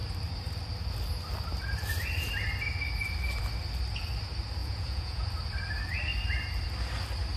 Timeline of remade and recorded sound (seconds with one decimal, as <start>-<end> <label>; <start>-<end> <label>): 0.0-4.6 recorded; 4.6-5.3 remade; 5.3-7.4 recorded